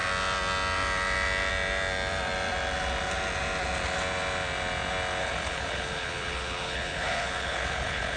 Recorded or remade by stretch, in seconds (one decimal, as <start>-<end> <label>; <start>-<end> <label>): 0.0-5.2 recorded; 5.2-8.2 remade